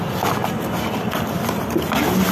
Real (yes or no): yes